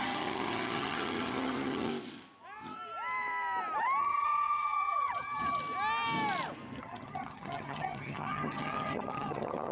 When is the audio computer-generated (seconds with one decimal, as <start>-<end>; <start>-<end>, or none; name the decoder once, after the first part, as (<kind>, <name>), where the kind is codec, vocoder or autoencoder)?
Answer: 0.0-1.9 (vocoder, HiFi-GAN); 4.0-5.6; 6.8-9.7